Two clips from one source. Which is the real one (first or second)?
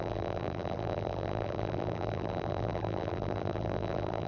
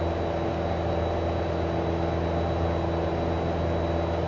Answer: second